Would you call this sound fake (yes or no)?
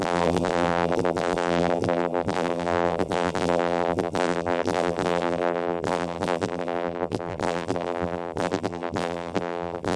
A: yes